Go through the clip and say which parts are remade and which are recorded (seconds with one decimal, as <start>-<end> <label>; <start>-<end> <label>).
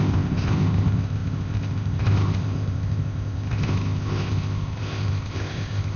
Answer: 0.0-6.0 remade